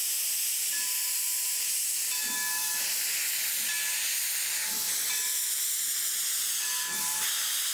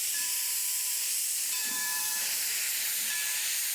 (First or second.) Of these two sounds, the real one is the first